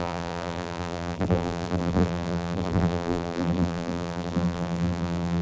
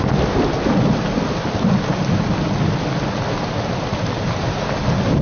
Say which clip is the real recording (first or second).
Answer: second